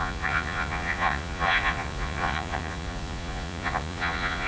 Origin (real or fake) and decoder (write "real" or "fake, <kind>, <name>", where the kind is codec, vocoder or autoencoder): fake, vocoder, Vocos